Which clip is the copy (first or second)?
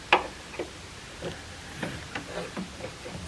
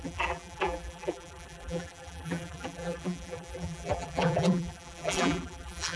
second